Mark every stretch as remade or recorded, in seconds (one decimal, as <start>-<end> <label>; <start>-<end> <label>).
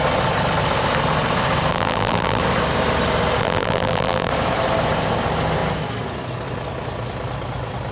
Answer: 0.0-1.7 recorded; 1.7-2.4 remade; 2.4-3.4 recorded; 3.4-4.3 remade; 4.3-7.9 recorded